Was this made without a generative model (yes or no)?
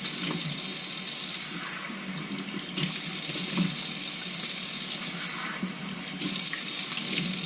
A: yes